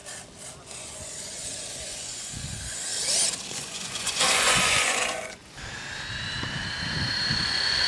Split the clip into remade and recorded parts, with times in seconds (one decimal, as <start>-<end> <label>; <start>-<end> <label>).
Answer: 0.0-0.6 recorded; 0.6-2.9 remade; 2.9-3.5 recorded; 3.5-5.4 remade; 5.4-7.3 recorded; 7.3-7.9 remade